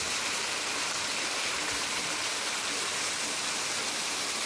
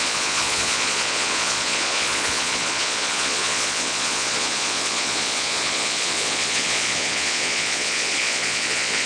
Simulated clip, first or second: second